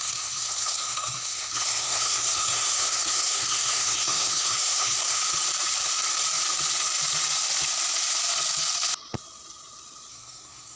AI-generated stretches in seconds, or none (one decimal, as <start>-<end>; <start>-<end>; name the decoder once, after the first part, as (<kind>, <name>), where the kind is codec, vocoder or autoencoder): 0.0-5.2 (codec, SNAC); 10.1-10.8